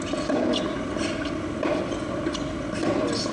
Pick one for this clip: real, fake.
real